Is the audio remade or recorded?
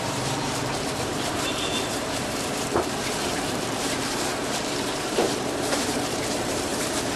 remade